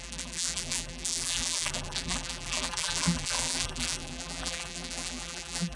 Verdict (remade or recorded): remade